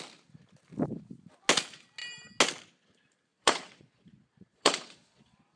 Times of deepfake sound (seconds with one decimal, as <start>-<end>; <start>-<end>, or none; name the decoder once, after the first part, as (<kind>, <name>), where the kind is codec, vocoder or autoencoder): 3.3-5.6 (vocoder, Vocos)